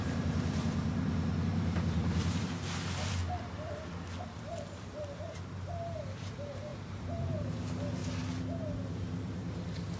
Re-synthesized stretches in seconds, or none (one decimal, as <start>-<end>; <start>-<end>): 0.0-3.2; 4.2-8.0; 8.6-10.0